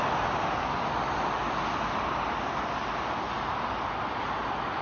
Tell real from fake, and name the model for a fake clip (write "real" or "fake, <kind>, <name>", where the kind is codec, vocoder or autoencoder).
real